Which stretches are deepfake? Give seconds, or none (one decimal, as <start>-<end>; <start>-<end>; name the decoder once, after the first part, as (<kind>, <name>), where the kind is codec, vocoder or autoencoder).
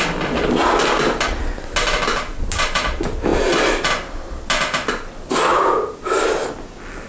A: none